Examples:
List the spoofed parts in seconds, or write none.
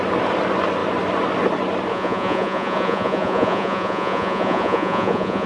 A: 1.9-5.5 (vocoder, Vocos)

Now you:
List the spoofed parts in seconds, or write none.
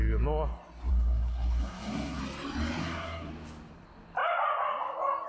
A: 0.9-2.2 (codec, SNAC); 2.8-3.3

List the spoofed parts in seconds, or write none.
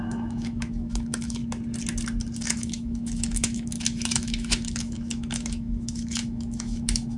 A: 0.0-1.4 (autoencoder, DAC-VAE); 2.4-7.2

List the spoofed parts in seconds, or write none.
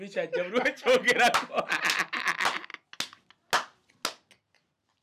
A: none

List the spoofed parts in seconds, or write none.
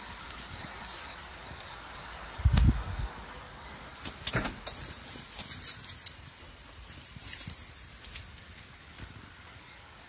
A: 0.0-3.9 (codec, DAC); 8.3-10.1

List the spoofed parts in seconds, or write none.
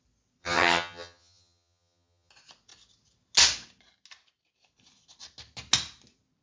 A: 0.4-2.3 (vocoder, HiFi-GAN)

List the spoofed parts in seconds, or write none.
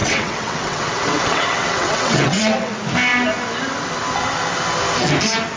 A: 0.0-2.7 (vocoder, WaveNeXt)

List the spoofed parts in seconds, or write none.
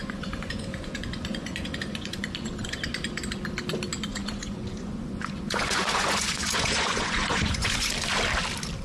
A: 0.0-2.9 (vocoder, Vocos); 4.1-7.9